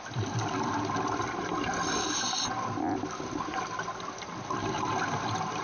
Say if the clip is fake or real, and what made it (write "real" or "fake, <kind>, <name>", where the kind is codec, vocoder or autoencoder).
real